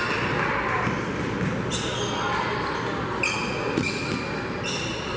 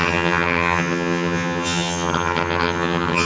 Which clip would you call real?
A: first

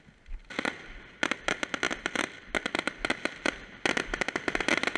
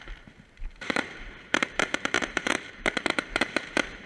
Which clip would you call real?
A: first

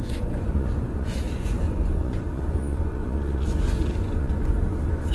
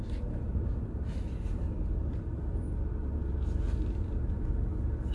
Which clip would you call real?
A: second